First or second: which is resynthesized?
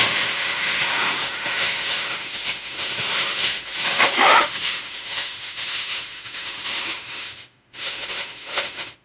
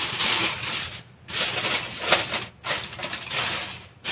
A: first